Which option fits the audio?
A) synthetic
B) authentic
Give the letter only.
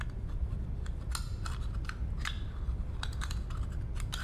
B